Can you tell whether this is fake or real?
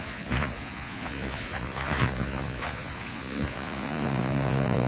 fake